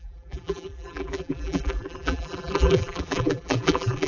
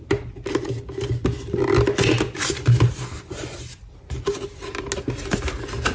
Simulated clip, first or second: first